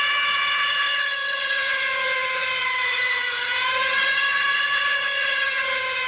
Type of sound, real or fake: fake